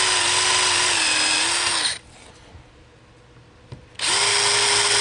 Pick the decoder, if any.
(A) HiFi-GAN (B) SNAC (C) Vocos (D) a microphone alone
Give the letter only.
D